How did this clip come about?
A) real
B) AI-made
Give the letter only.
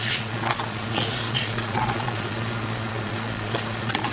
B